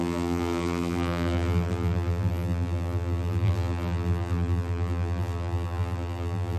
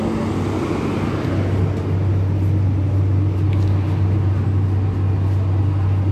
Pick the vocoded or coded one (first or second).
first